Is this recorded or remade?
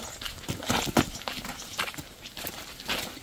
recorded